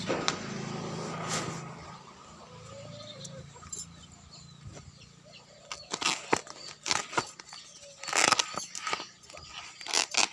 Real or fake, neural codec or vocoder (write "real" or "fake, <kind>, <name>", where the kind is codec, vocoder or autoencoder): real